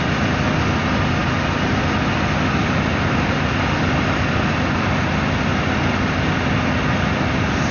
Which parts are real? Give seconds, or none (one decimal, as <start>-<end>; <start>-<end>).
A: 0.0-7.7